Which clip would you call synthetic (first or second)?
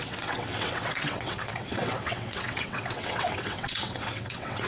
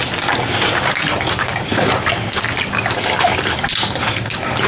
first